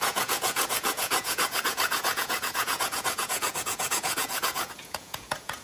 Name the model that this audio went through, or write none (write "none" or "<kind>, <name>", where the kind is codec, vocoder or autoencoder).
vocoder, Vocos